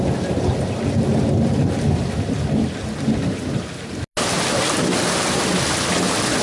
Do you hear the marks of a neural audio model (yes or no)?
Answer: no